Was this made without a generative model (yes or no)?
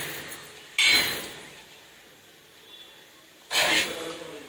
yes